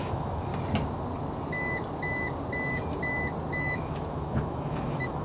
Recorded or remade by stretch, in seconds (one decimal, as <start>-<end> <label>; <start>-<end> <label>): 0.0-0.5 remade; 0.5-3.6 recorded; 3.6-5.2 remade